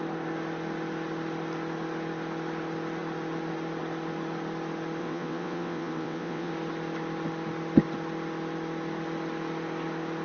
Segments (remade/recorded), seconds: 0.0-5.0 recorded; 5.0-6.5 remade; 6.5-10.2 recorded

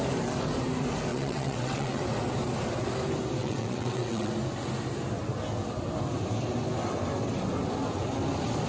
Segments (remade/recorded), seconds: 0.0-1.1 recorded; 1.1-2.0 remade; 2.0-3.4 recorded; 3.4-4.3 remade; 4.3-8.7 recorded

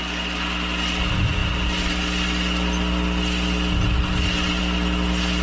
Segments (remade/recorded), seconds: 0.0-5.4 recorded